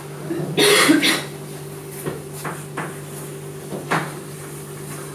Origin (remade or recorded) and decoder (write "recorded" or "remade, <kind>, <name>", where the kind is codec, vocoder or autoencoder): recorded